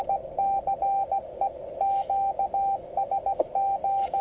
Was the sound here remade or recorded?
recorded